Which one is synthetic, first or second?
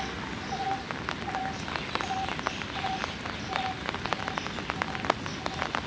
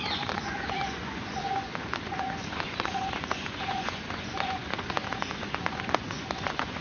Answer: second